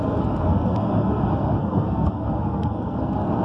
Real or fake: fake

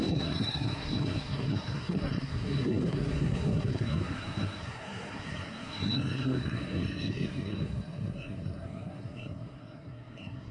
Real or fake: fake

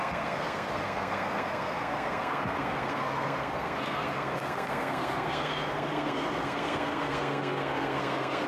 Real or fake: fake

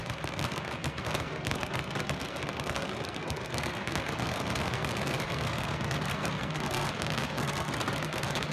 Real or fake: fake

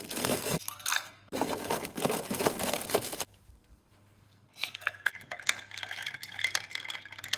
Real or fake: fake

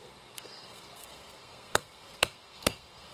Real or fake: fake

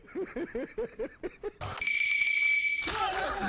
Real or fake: real